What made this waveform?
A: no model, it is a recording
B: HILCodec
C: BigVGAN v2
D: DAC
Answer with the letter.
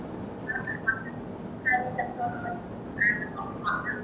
A